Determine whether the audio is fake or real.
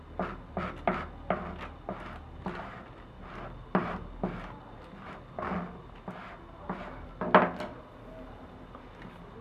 real